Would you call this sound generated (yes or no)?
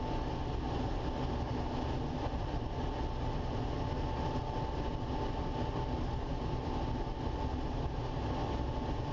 no